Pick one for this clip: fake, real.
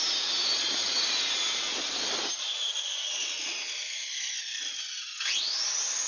real